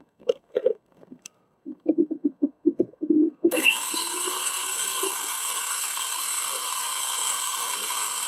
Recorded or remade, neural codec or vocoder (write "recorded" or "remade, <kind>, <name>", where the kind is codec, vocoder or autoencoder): remade, codec, SNAC